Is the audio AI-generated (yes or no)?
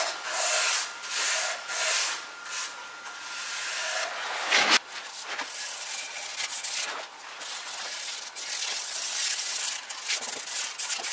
no